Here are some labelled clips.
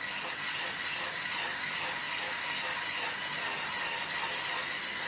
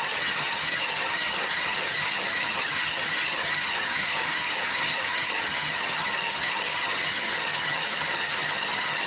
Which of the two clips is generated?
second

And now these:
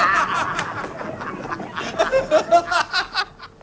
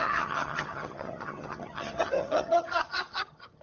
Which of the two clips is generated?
second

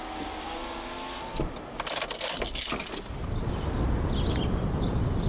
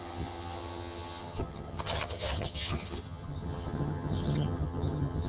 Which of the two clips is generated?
second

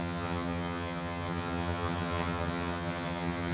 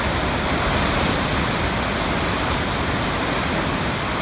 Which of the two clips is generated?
first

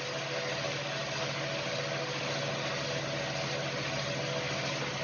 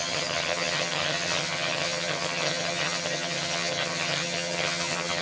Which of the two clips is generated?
second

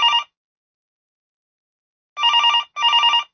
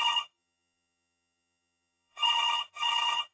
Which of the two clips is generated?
second